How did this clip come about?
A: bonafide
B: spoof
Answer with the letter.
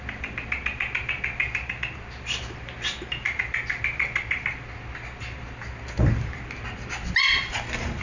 A